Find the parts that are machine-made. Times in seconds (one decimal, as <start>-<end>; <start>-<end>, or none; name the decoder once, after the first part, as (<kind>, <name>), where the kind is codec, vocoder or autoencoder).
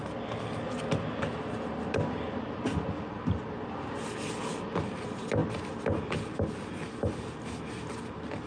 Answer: none